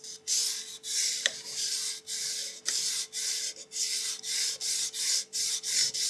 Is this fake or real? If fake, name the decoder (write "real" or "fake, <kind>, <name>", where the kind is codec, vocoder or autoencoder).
real